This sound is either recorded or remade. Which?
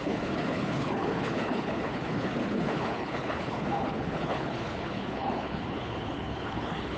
remade